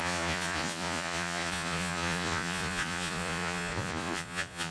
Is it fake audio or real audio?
fake